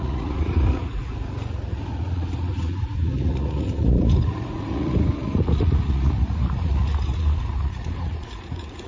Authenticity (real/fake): fake